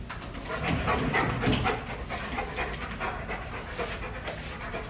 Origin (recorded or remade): recorded